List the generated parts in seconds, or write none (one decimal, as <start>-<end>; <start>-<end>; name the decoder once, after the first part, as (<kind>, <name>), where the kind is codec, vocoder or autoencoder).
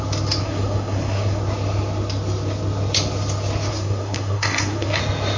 0.4-1.4 (codec, SNAC); 3.7-5.0